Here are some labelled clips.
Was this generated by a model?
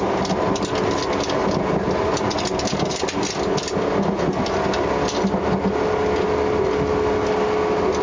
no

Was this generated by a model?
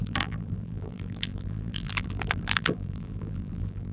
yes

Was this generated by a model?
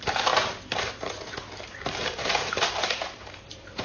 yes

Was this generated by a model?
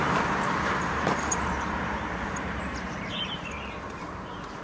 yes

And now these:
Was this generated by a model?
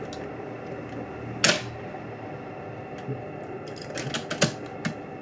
no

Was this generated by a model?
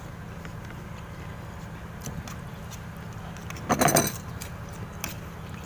no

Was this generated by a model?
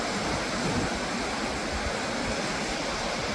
no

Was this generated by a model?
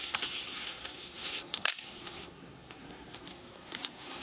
yes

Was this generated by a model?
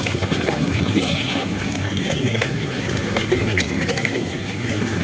yes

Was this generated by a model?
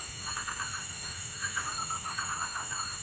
yes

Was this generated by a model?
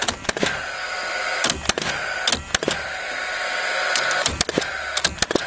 no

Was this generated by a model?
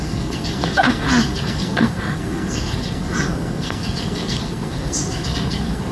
yes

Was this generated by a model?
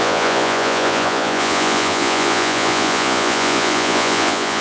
yes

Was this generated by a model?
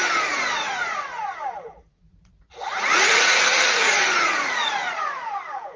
yes